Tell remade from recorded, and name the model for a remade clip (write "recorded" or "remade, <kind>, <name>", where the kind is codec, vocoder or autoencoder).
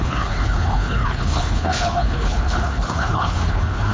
remade, codec, HILCodec